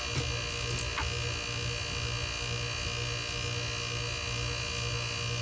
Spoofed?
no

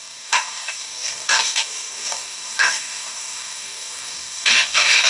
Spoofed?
yes